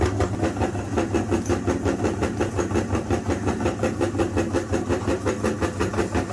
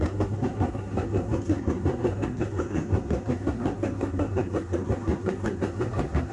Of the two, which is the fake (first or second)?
second